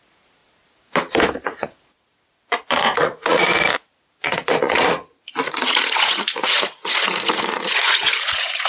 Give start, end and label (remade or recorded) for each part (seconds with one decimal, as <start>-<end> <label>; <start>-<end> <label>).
0.0-0.4 remade; 0.4-1.4 recorded; 1.4-8.7 remade